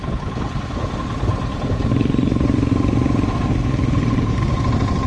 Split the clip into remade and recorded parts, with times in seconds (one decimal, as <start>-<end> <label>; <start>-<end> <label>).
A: 0.0-1.3 recorded; 1.3-4.4 remade; 4.4-5.1 recorded